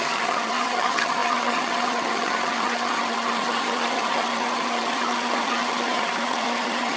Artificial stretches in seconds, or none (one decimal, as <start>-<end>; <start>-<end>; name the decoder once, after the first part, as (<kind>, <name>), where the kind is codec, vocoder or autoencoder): 0.0-7.0 (vocoder, HiFi-GAN)